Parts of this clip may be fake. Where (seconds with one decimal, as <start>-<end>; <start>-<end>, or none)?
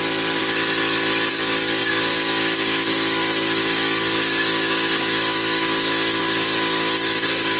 0.0-0.4; 1.3-7.6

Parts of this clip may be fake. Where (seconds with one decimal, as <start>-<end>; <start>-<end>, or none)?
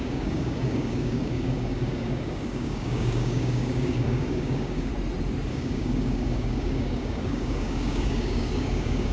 0.0-4.9; 5.5-9.1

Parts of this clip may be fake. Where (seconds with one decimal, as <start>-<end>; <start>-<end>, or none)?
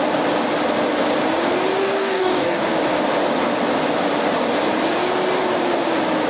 1.8-2.6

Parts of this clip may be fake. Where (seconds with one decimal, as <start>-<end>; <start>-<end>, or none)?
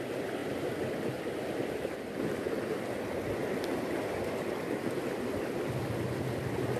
none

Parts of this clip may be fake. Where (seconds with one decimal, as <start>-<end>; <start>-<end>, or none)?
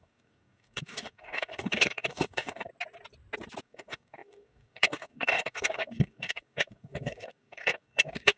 0.0-2.7; 3.6-8.4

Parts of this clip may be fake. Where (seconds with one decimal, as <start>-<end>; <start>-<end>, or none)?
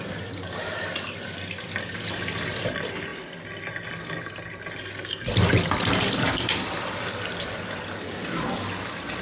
none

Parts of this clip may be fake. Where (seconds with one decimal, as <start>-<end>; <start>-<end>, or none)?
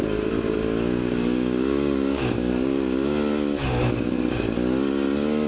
1.0-2.5